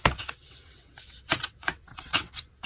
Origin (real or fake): fake